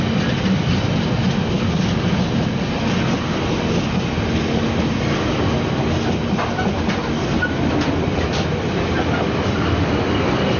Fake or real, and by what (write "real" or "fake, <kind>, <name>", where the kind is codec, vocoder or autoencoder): real